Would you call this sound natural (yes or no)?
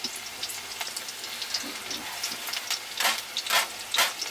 yes